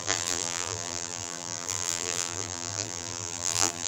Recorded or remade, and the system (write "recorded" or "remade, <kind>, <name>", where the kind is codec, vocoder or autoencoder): remade, vocoder, BigVGAN v2